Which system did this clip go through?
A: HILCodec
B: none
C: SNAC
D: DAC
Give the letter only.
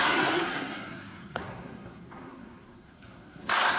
C